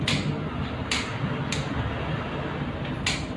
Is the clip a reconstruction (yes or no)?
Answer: no